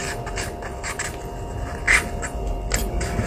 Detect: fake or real real